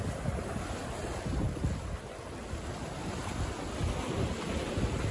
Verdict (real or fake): real